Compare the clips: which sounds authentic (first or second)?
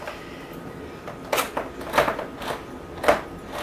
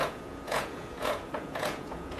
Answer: first